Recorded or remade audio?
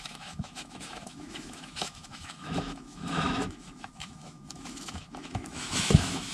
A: remade